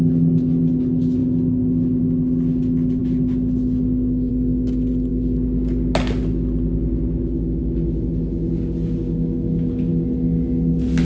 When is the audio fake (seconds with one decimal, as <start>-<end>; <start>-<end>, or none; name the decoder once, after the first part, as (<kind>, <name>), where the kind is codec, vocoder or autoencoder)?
none